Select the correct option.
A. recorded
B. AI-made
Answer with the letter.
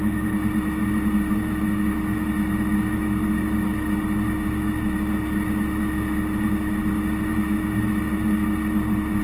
A